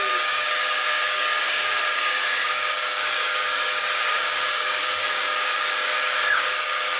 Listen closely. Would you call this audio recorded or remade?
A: remade